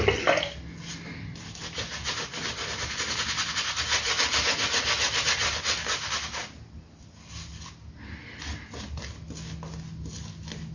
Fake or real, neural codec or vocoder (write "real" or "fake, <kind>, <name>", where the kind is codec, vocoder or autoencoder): real